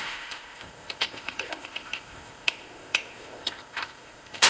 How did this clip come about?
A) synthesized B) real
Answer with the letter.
A